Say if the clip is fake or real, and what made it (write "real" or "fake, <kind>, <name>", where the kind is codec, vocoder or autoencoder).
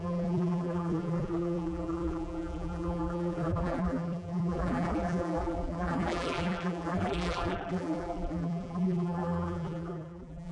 fake, vocoder, BigVGAN v2